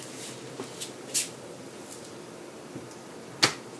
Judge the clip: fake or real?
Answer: real